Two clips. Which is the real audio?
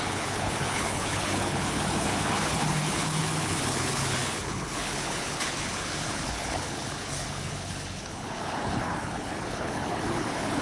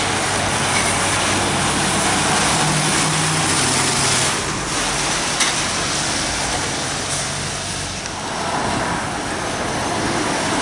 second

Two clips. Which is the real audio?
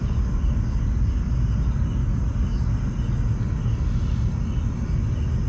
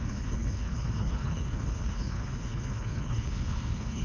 first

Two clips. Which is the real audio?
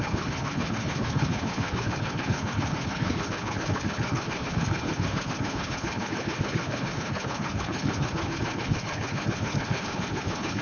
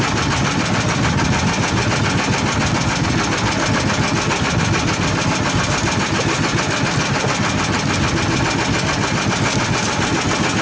second